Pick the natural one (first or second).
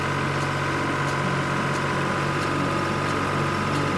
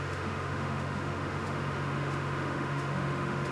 first